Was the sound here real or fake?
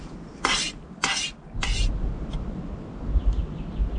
real